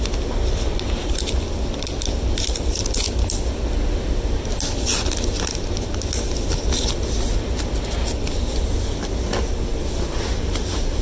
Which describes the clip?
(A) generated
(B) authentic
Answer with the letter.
B